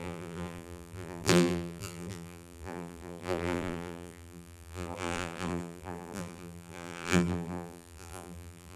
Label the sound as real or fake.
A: fake